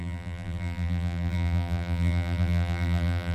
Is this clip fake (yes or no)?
yes